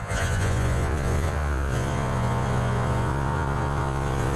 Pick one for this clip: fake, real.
fake